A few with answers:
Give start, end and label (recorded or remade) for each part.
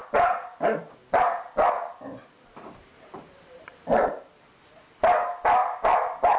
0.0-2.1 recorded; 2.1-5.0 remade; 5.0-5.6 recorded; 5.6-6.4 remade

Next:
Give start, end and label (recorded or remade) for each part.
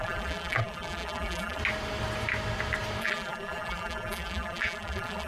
0.0-1.6 remade; 1.6-3.0 recorded; 3.0-5.3 remade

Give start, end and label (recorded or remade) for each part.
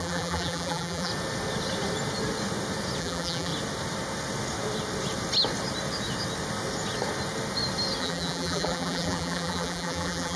0.0-1.1 remade; 1.1-3.0 recorded; 3.0-3.5 remade; 3.5-8.0 recorded; 8.0-10.4 remade